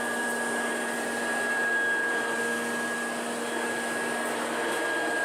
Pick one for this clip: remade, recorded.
recorded